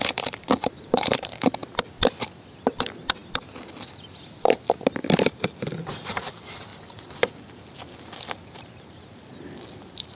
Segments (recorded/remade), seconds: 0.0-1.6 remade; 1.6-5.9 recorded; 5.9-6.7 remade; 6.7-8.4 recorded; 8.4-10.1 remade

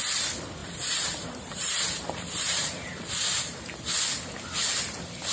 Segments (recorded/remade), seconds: 0.0-0.6 recorded; 0.6-3.8 remade; 3.8-5.3 recorded

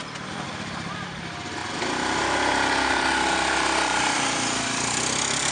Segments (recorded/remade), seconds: 0.0-1.6 remade; 1.6-4.0 recorded; 4.0-5.5 remade

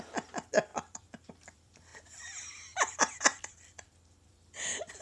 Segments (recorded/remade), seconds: 0.0-0.7 remade; 0.7-1.3 recorded; 1.3-5.0 remade